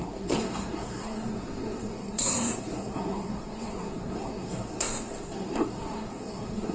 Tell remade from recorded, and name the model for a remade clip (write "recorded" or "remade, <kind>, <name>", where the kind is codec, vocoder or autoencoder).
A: remade, codec, SNAC